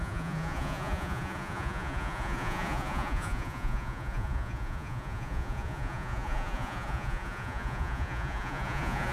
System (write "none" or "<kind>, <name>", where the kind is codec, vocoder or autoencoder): vocoder, Vocos